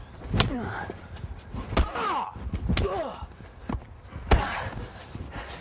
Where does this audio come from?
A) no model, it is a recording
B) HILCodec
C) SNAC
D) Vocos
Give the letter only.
A